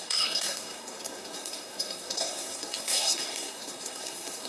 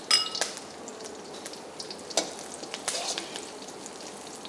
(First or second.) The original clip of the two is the second